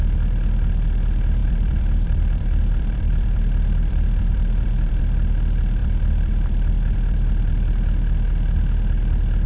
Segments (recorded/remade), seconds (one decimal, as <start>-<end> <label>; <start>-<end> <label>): 0.0-1.4 recorded; 1.4-5.0 remade; 5.0-5.8 recorded; 5.8-7.5 remade; 7.5-9.5 recorded